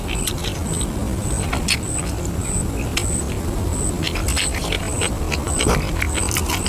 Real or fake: real